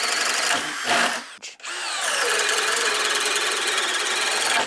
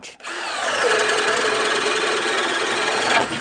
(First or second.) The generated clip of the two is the second